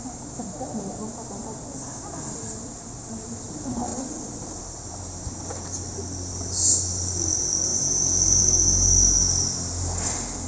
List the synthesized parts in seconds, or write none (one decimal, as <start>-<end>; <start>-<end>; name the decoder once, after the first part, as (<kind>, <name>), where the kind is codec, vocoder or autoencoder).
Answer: 3.9-4.9 (vocoder, BigVGAN v2)